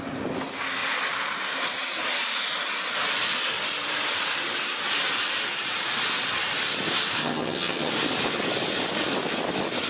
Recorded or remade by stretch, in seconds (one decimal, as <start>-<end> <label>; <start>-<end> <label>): 0.0-7.2 recorded; 7.2-7.9 remade; 7.9-9.9 recorded